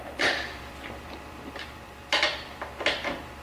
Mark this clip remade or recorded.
remade